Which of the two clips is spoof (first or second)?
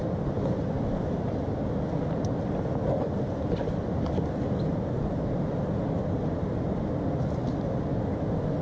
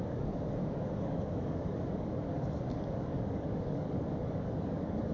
second